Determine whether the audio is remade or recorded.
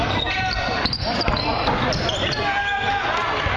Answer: recorded